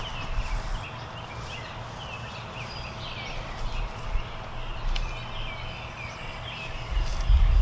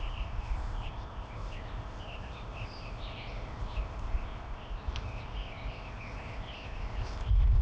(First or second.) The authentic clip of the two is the first